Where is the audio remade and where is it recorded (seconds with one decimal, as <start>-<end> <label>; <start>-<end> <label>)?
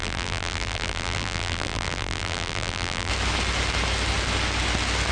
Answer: 0.0-3.1 remade; 3.1-5.1 recorded